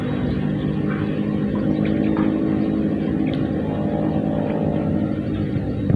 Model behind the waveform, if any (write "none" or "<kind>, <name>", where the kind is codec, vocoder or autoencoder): none